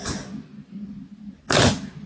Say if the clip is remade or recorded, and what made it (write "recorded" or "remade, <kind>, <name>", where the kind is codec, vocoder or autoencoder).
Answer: recorded